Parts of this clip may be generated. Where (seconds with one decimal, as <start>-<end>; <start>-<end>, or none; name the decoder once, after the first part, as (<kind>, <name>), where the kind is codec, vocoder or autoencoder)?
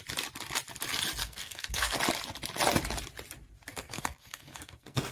1.2-2.0 (codec, SNAC); 3.7-5.1